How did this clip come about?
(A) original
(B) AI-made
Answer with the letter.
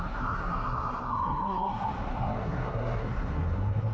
B